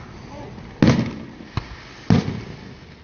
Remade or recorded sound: recorded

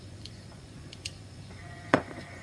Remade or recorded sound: remade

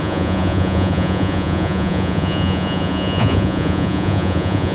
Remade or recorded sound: remade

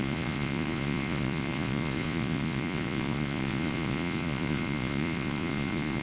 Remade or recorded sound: remade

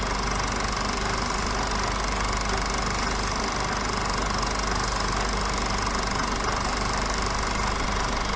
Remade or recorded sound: recorded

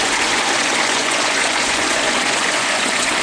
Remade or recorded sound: remade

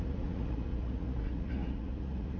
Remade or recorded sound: remade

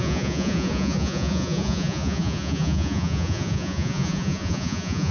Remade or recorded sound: remade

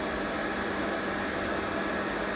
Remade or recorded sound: recorded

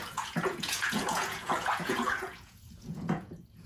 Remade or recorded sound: remade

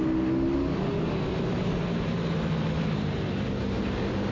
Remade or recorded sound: recorded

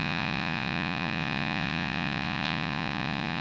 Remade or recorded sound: remade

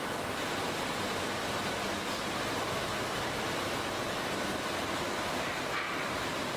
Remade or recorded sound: recorded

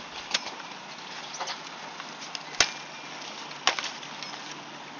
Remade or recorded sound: recorded